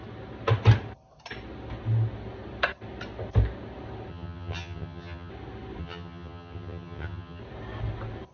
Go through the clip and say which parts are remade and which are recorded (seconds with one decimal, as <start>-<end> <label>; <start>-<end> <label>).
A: 0.0-4.1 recorded; 4.1-5.3 remade; 5.3-5.8 recorded; 5.8-7.4 remade; 7.4-8.3 recorded